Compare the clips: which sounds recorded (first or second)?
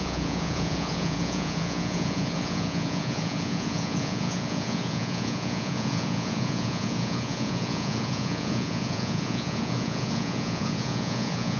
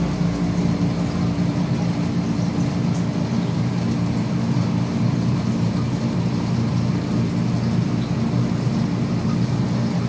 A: second